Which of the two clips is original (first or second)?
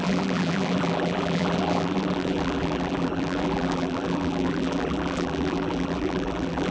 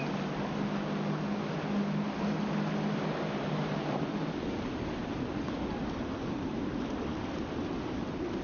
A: second